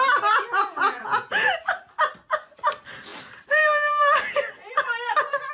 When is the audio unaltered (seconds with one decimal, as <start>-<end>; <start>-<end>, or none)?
0.0-0.5; 1.4-5.5